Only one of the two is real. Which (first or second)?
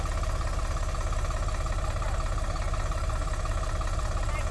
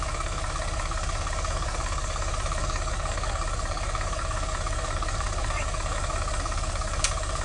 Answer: first